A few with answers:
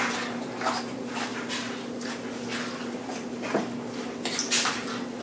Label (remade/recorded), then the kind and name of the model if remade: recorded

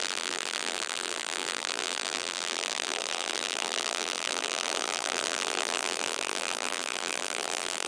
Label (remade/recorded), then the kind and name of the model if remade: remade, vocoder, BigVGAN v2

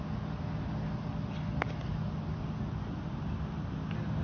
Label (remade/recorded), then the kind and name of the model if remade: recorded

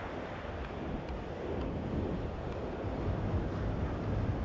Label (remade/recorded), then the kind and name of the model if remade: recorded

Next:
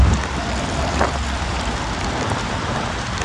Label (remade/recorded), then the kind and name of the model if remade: remade, vocoder, BigVGAN v2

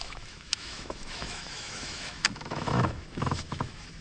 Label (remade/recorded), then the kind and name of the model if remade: remade, autoencoder, DAC-VAE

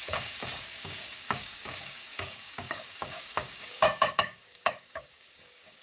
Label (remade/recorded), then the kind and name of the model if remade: remade, codec, DAC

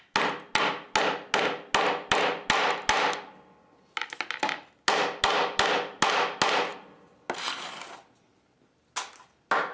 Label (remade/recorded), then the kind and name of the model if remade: recorded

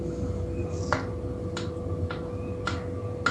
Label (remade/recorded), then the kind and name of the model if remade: recorded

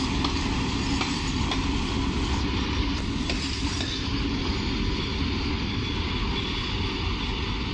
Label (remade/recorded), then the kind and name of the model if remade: recorded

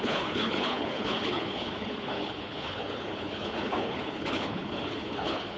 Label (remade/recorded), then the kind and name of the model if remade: remade, codec, HILCodec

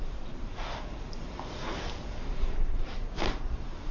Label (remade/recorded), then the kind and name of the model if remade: remade, vocoder, BigVGAN v2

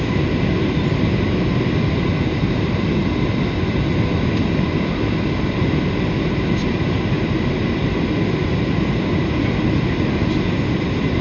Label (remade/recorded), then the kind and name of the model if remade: recorded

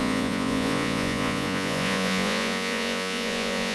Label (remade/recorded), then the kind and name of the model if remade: remade, vocoder, Vocos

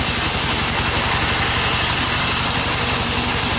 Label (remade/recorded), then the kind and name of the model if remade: recorded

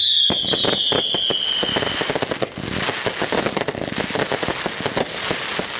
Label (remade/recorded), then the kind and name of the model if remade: recorded